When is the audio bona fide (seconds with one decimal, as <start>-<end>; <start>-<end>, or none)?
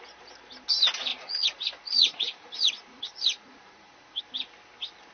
0.0-1.1; 4.2-5.1